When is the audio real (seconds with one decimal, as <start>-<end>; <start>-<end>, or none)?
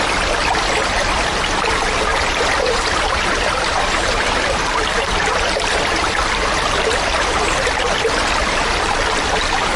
0.0-2.1; 4.3-9.8